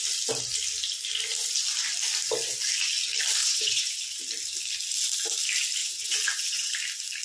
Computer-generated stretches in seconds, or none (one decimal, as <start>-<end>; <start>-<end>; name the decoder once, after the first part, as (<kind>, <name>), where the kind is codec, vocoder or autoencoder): 3.4-4.2 (vocoder, WaveNeXt); 5.8-6.7